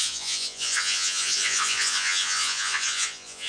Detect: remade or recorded remade